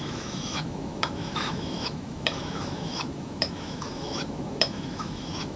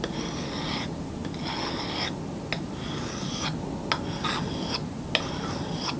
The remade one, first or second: first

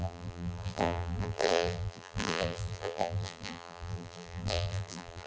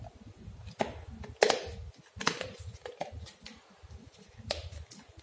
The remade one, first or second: first